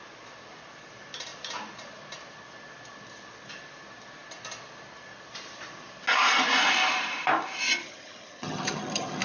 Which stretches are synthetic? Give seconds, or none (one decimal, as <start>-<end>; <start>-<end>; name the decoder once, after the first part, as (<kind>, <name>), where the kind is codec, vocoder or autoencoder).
7.8-9.2 (vocoder, HiFi-GAN)